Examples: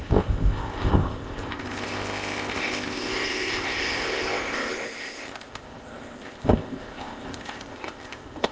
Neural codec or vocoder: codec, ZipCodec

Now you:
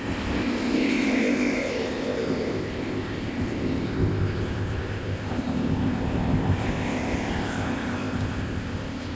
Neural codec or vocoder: codec, ZipCodec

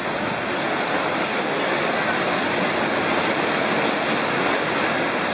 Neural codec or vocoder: none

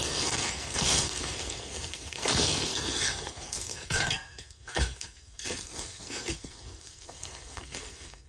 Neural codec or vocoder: codec, SNAC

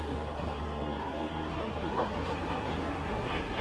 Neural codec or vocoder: codec, SNAC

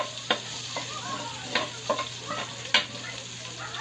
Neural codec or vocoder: none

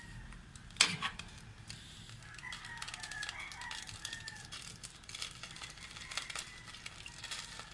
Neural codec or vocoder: none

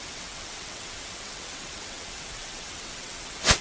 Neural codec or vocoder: vocoder, WaveNeXt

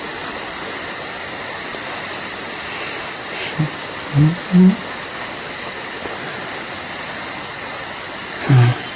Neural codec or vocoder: none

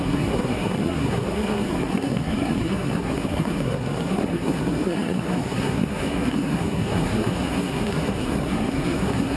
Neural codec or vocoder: codec, SNAC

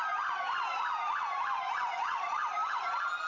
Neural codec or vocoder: none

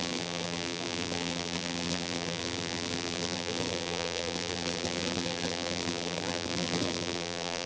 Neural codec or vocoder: vocoder, BigVGAN v2